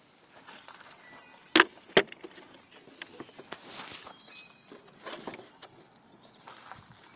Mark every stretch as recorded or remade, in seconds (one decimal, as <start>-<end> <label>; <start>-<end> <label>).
0.0-7.2 recorded